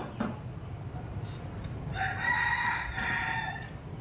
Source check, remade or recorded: recorded